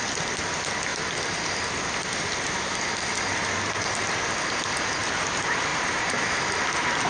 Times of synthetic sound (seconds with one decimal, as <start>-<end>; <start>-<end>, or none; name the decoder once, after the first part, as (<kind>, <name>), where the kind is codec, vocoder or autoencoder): 5.7-6.4 (vocoder, BigVGAN v2)